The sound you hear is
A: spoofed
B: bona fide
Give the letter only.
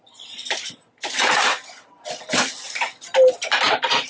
B